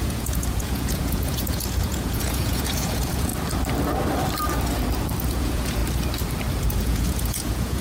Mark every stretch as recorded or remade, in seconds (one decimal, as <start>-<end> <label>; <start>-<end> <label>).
0.0-3.3 remade; 3.3-5.2 recorded; 5.2-5.8 remade; 5.8-6.6 recorded; 6.6-7.8 remade